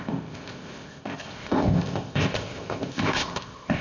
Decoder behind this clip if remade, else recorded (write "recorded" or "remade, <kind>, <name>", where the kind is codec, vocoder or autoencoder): remade, codec, ZipCodec